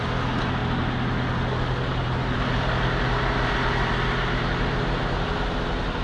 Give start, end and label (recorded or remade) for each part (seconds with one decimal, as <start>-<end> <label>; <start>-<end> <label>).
0.0-6.0 recorded